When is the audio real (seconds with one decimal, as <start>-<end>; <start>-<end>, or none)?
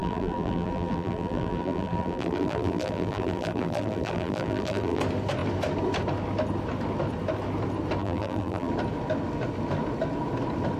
5.0-8.0; 8.7-10.8